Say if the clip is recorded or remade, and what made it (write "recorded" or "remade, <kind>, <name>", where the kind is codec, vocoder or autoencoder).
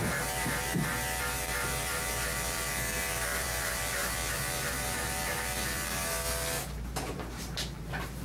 remade, vocoder, BigVGAN v2